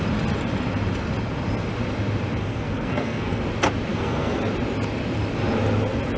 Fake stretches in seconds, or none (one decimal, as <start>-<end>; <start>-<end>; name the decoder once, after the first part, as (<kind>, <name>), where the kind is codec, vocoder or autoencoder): 2.4-3.4 (codec, SNAC); 3.9-4.4